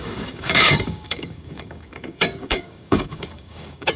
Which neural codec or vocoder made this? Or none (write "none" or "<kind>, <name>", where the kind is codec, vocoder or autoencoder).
codec, DAC